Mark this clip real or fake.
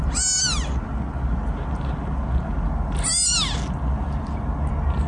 real